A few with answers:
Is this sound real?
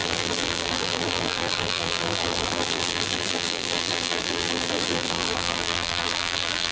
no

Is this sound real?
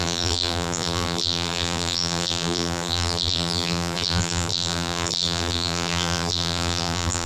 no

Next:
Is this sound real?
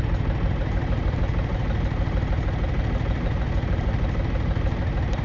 no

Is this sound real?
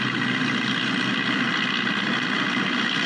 yes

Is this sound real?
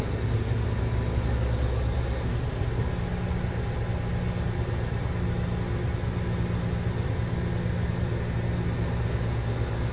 yes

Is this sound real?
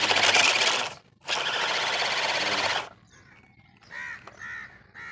yes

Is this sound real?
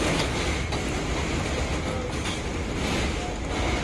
yes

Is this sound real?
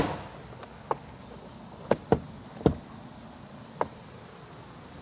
yes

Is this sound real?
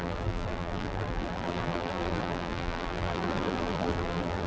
no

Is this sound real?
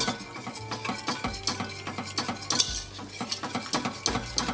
yes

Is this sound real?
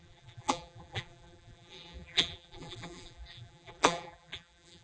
no